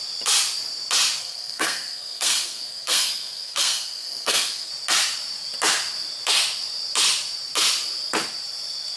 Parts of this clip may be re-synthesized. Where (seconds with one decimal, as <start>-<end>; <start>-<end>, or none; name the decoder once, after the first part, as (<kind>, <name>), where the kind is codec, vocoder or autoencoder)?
1.2-4.7 (codec, SNAC)